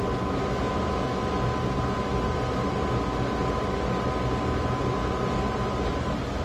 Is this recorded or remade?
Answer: recorded